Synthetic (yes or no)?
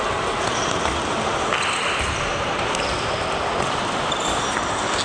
no